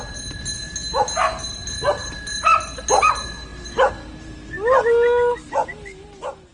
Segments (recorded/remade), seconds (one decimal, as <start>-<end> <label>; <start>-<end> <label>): 0.0-6.5 recorded